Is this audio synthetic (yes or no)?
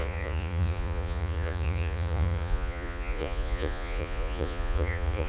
yes